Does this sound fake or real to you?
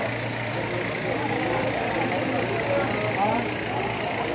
real